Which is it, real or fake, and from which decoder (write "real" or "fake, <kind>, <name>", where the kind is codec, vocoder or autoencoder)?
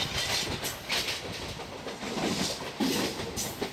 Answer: real